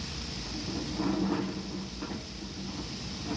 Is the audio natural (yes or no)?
yes